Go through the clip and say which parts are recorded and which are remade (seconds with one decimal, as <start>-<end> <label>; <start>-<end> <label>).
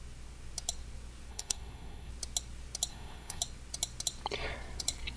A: 0.0-1.3 recorded; 1.3-2.1 remade; 2.1-2.9 recorded; 2.9-3.4 remade; 3.4-5.2 recorded